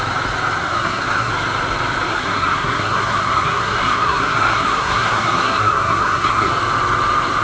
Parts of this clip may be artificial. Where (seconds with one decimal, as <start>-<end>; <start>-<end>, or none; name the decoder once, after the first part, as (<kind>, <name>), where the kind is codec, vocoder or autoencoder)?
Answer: 0.6-1.3 (codec, SNAC); 2.1-6.5

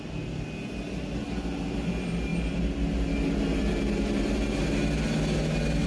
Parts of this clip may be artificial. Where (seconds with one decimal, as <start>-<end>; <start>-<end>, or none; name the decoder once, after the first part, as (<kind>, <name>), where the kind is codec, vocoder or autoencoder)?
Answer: none